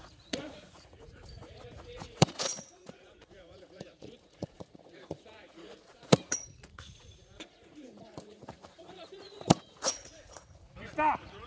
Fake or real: fake